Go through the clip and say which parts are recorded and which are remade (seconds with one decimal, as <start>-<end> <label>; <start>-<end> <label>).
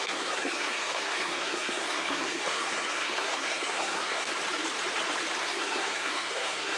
0.0-4.3 remade; 4.3-5.4 recorded; 5.4-6.8 remade